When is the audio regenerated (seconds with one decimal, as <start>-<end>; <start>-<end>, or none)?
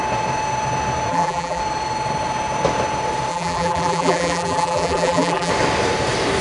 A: 1.1-1.6; 3.3-5.5